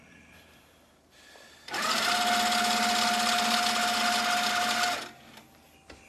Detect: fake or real real